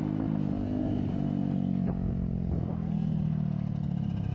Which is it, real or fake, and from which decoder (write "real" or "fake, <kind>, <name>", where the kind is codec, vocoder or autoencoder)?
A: real